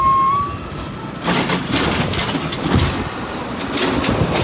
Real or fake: real